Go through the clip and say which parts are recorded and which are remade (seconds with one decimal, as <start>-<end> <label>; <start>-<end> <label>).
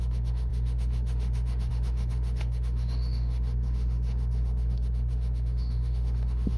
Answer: 0.0-6.6 remade